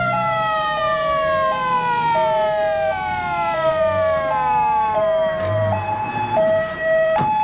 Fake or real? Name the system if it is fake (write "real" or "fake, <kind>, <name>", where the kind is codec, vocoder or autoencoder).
real